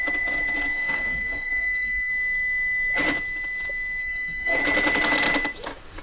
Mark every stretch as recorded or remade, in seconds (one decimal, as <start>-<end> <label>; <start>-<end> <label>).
0.0-0.7 recorded; 0.7-2.1 remade; 2.1-4.0 recorded; 4.0-4.6 remade; 4.6-6.0 recorded